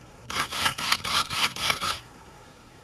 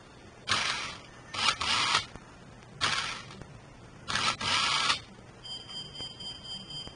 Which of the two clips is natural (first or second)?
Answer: second